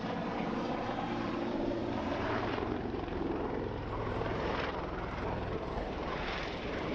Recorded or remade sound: remade